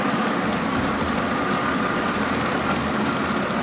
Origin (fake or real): real